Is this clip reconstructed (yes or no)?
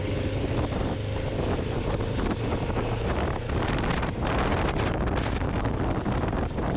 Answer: no